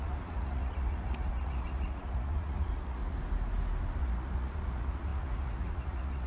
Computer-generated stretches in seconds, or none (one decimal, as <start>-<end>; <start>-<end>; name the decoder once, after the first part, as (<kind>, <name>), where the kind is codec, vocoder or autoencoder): 0.0-3.0 (vocoder, Vocos); 4.0-6.3